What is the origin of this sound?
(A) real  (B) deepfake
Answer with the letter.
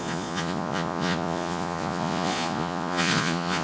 B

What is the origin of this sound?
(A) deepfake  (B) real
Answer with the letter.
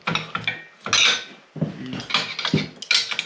B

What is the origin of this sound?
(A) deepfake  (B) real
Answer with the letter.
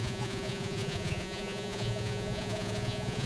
A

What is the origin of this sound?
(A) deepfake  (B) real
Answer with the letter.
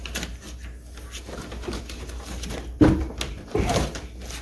B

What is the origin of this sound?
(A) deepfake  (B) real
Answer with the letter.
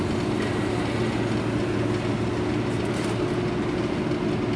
B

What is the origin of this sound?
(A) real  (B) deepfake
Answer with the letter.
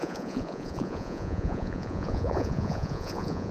B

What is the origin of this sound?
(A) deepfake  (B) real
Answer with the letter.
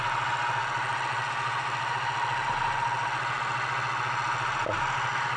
B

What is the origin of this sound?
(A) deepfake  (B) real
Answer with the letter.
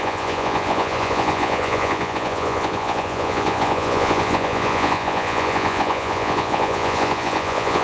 A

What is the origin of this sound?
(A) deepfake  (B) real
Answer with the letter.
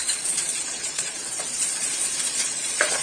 A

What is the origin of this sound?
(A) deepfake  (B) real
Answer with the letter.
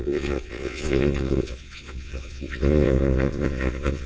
A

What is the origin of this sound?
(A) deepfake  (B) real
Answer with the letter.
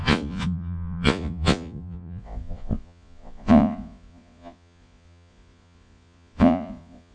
A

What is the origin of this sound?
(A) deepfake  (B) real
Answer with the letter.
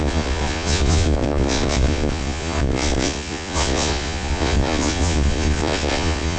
A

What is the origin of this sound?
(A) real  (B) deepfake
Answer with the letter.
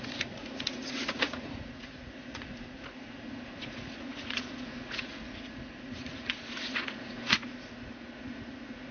B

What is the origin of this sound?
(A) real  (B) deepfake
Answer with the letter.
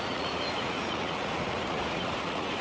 B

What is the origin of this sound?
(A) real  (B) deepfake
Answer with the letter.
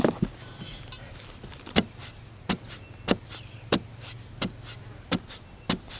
A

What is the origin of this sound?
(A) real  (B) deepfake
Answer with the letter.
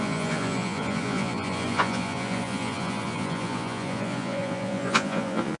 B